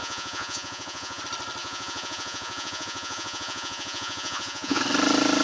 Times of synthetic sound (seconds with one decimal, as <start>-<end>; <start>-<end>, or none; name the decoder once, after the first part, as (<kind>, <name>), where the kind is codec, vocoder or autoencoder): 0.0-1.2 (vocoder, Vocos); 1.6-4.8